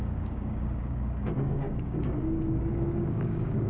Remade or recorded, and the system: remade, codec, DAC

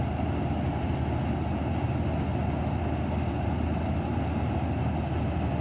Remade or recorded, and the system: recorded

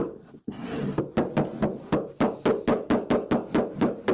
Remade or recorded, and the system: recorded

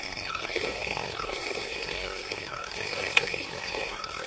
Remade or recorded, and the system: remade, codec, SNAC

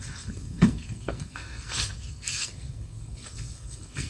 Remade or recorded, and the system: remade, codec, SNAC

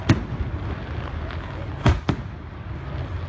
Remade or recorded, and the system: recorded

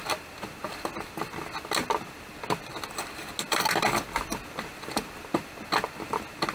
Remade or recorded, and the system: recorded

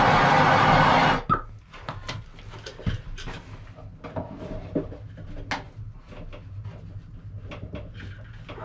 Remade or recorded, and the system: recorded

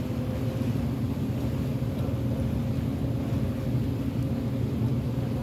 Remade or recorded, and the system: recorded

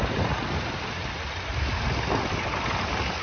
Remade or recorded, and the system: recorded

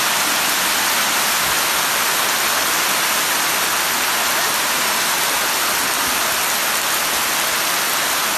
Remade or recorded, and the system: recorded